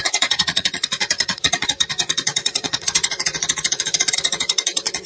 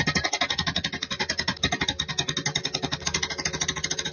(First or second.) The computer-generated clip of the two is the first